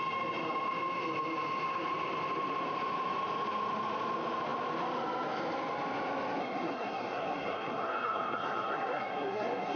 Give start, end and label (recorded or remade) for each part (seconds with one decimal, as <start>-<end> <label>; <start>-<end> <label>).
0.0-6.4 recorded; 6.4-9.8 remade